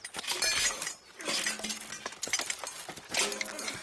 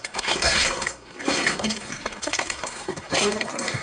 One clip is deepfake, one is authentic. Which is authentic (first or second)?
first